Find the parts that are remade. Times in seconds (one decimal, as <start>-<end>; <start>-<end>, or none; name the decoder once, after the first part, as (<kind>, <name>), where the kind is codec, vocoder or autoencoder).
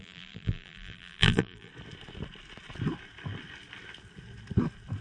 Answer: 0.0-1.7 (vocoder, BigVGAN v2)